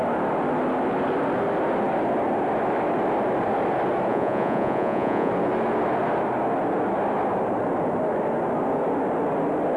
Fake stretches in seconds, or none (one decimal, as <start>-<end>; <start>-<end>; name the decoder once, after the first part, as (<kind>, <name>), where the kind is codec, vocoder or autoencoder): 4.1-5.3 (vocoder, Vocos)

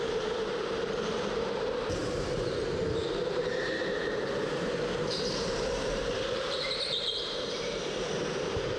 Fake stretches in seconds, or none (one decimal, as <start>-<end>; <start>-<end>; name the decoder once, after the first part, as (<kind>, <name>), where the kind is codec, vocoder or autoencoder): 0.0-8.8 (vocoder, BigVGAN v2)

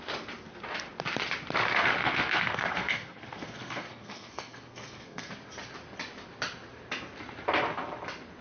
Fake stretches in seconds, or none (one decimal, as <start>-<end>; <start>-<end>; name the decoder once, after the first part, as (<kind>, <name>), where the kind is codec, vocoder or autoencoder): 2.0-5.3 (codec, SNAC)

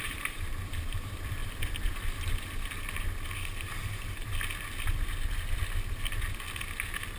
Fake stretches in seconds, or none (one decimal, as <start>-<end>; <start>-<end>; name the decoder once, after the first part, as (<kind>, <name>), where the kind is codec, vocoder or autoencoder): 0.0-1.4 (vocoder, BigVGAN v2); 3.0-4.3

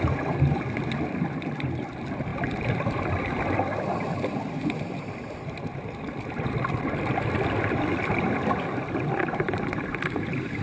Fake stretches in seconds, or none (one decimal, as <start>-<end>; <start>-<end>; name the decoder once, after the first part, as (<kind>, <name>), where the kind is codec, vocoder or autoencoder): 0.0-10.6 (vocoder, BigVGAN v2)

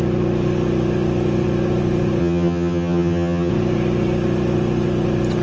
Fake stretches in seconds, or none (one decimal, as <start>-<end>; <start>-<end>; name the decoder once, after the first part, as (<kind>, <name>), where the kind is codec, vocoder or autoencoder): 2.2-3.5 (vocoder, HiFi-GAN)

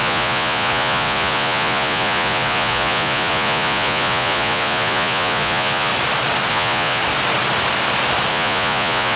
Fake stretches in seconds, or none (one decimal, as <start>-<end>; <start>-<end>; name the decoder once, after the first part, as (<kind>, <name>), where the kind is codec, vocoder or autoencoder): 0.0-5.9 (vocoder, Vocos); 6.5-7.0; 8.3-9.2